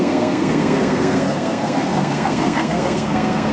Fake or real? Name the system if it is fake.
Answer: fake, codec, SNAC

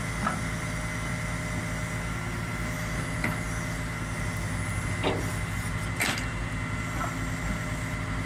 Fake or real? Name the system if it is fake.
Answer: real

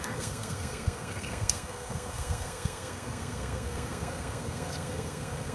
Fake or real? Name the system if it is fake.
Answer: fake, codec, SNAC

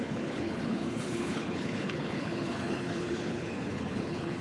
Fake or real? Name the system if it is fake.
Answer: fake, codec, HILCodec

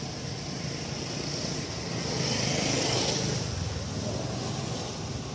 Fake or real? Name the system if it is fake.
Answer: real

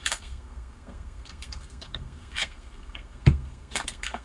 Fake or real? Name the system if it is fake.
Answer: fake, codec, SNAC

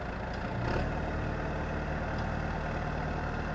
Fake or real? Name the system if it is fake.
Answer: real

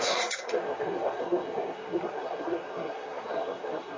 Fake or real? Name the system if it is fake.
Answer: fake, codec, SNAC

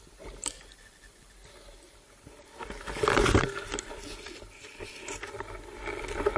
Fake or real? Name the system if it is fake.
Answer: real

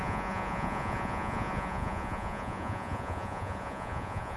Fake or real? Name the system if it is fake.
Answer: fake, vocoder, Vocos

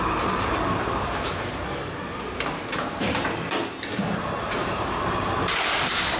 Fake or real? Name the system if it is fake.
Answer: fake, vocoder, BigVGAN v2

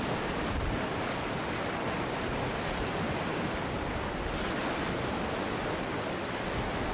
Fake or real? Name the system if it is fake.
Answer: real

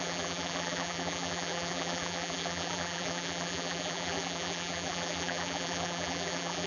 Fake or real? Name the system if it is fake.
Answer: fake, vocoder, BigVGAN v2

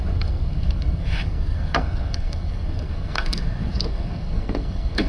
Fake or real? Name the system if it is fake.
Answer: fake, codec, SNAC